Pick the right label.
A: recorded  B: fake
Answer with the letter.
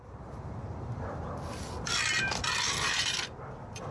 B